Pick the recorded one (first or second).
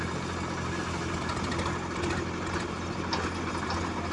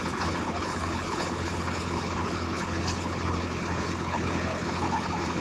first